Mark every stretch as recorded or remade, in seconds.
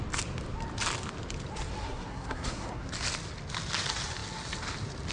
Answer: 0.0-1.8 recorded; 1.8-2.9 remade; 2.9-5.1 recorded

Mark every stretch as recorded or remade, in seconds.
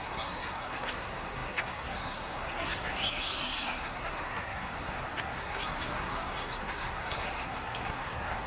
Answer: 0.0-8.5 remade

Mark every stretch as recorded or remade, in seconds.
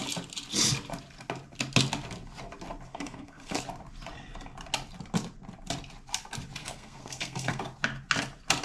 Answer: 0.0-2.9 recorded; 2.9-3.6 remade; 3.6-6.6 recorded; 6.6-7.6 remade; 7.6-8.6 recorded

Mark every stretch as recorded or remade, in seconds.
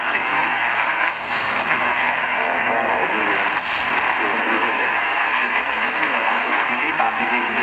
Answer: 0.0-3.2 remade; 3.2-4.4 recorded; 4.4-7.6 remade